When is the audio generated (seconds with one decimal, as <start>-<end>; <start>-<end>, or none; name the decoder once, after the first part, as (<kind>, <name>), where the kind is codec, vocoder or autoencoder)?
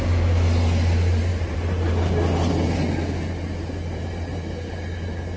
none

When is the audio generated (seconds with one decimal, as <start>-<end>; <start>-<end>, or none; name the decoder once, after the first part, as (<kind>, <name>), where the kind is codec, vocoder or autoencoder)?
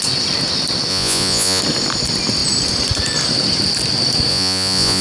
0.9-1.6 (vocoder, Vocos); 4.3-5.0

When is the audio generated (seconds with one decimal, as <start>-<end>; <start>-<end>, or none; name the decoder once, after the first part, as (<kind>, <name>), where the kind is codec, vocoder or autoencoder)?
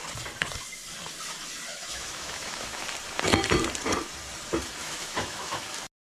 1.7-2.8 (autoencoder, DAC-VAE); 4.8-5.6